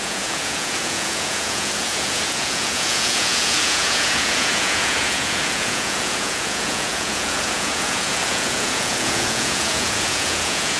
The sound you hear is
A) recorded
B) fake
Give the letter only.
B